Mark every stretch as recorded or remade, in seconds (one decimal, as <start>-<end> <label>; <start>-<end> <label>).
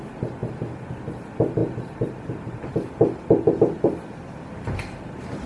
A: 0.0-5.5 recorded